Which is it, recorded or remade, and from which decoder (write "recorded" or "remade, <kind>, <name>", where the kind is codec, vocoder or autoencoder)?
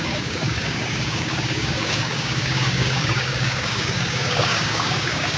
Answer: remade, codec, DAC